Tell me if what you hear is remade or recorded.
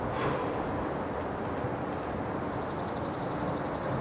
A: recorded